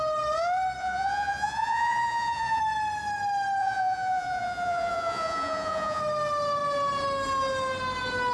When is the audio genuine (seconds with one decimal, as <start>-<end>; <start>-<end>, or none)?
0.0-0.8; 2.6-3.6; 6.0-8.3